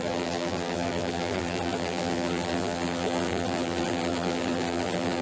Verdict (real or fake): fake